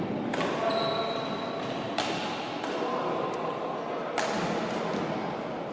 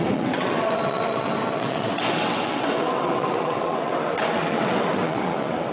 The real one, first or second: first